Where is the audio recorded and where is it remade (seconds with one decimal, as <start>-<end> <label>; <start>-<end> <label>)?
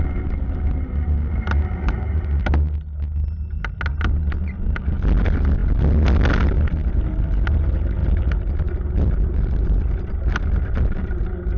0.0-8.0 recorded; 8.0-11.2 remade; 11.2-11.6 recorded